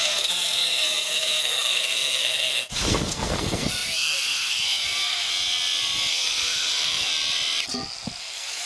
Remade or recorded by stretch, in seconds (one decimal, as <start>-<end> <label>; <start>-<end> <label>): 0.0-5.3 remade; 5.3-6.1 recorded; 6.1-7.1 remade; 7.1-8.2 recorded; 8.2-8.7 remade